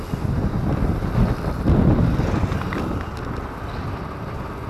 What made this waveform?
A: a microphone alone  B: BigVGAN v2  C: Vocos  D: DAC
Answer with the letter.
A